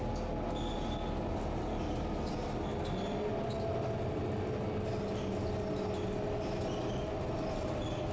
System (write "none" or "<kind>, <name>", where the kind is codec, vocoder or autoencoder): none